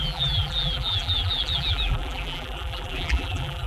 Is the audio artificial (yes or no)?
yes